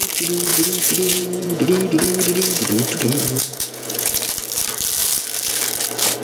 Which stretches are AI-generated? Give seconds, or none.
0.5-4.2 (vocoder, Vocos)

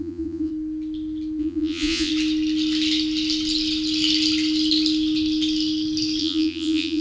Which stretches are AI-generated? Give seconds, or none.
0.0-0.5 (vocoder, Vocos); 1.4-2.1; 6.2-7.0

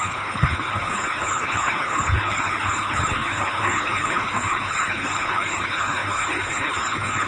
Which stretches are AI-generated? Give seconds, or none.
0.0-7.3 (codec, HILCodec)

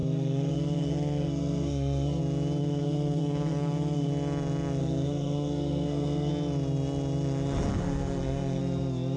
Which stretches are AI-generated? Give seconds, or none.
0.0-2.2 (codec, SNAC); 2.6-4.1; 4.8-6.3; 7.7-8.6

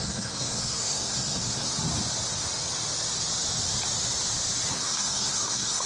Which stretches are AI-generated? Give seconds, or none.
0.0-1.7 (codec, SNAC); 4.7-5.9

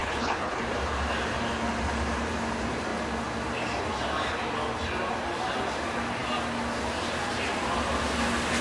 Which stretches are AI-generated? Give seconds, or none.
0.0-0.6 (codec, HILCodec)

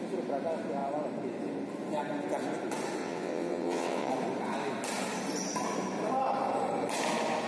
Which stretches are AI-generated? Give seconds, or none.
3.0-4.1 (vocoder, WaveNeXt)